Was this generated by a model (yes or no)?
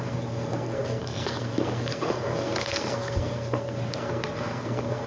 yes